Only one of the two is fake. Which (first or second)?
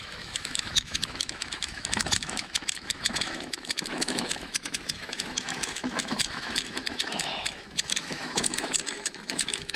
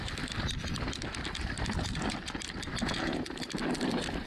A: first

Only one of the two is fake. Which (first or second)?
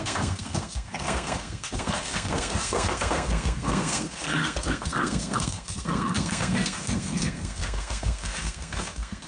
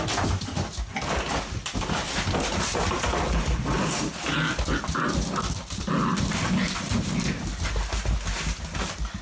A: first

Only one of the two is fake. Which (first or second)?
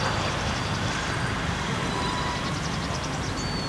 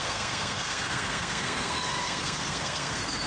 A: second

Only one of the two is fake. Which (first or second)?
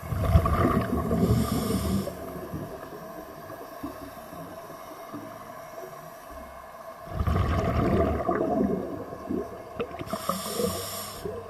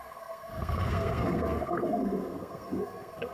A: second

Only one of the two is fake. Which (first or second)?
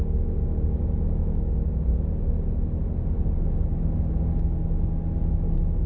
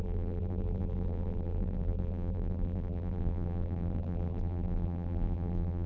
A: second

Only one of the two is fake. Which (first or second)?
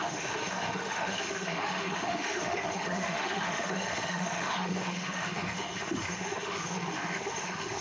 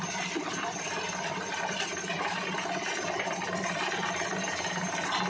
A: first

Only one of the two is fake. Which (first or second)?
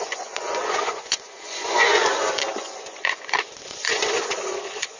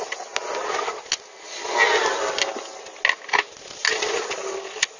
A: first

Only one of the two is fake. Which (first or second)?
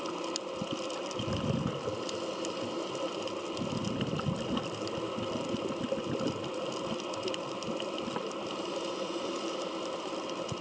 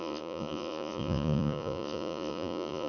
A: second